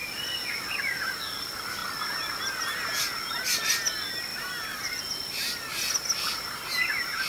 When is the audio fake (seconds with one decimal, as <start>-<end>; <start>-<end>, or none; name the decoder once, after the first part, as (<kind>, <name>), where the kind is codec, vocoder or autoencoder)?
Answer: 4.3-5.0 (vocoder, BigVGAN v2)